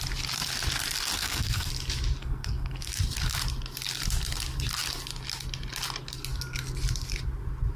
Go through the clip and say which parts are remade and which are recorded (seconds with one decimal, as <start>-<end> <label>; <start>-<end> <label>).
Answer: 0.0-1.2 recorded; 1.2-1.7 remade; 1.7-2.2 recorded; 2.2-2.9 remade; 2.9-7.8 recorded